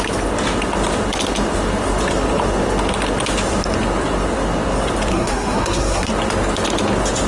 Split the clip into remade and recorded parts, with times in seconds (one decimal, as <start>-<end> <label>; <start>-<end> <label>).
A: 0.0-5.1 recorded; 5.1-6.1 remade; 6.1-7.3 recorded